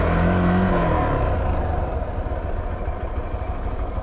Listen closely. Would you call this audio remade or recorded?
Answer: recorded